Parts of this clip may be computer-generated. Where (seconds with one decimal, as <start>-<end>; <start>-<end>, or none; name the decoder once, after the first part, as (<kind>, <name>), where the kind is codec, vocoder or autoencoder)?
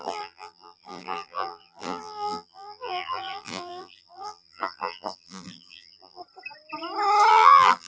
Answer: 0.0-6.2 (vocoder, BigVGAN v2); 7.3-7.9